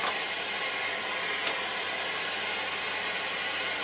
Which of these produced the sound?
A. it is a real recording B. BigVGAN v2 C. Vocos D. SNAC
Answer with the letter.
A